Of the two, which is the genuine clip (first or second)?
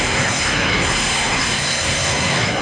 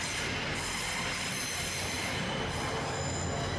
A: second